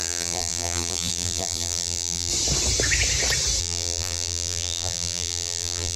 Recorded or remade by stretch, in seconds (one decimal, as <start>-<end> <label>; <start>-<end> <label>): 0.0-2.3 remade; 2.3-3.6 recorded; 3.6-6.0 remade

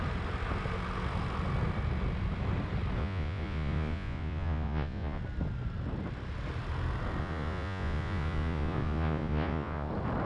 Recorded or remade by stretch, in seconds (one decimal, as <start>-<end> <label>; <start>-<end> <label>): 0.0-3.0 recorded; 3.0-5.2 remade; 5.2-7.2 recorded; 7.2-9.9 remade; 9.9-10.3 recorded

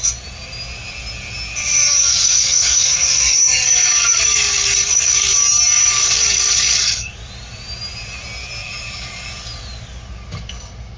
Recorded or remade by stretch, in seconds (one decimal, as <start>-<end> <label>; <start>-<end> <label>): 0.0-2.1 recorded; 2.1-5.3 remade; 5.3-5.8 recorded; 5.8-7.1 remade; 7.1-8.6 recorded; 8.6-9.3 remade; 9.3-11.0 recorded

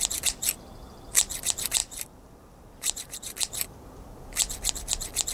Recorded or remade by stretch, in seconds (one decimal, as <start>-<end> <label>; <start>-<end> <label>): 0.0-1.8 recorded; 1.8-3.5 remade; 3.5-5.3 recorded